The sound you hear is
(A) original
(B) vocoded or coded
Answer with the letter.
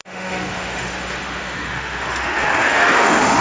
B